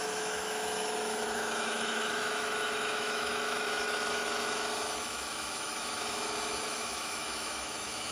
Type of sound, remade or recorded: remade